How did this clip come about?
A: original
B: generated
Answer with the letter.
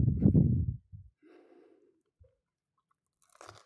A